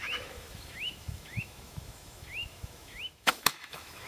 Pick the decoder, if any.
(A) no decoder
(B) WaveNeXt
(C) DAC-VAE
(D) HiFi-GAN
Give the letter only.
C